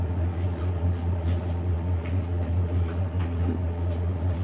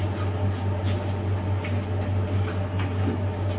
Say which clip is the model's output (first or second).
first